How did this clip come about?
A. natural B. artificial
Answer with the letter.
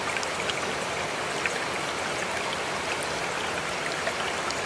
A